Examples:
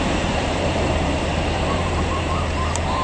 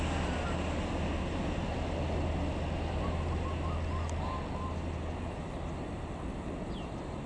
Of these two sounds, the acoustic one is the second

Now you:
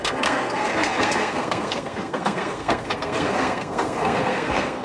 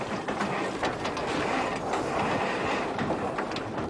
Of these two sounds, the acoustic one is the second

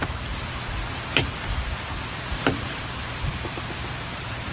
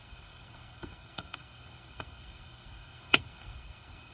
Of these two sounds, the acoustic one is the first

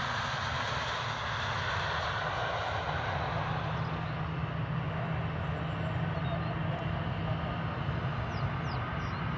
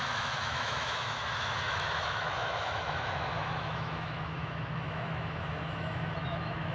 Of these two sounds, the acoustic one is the first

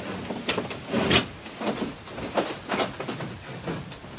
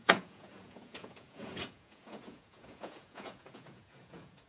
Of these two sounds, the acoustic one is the first